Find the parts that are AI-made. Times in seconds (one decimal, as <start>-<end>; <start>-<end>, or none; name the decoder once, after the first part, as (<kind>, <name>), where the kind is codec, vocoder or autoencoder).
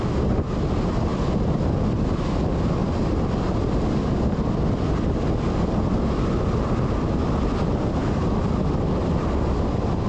none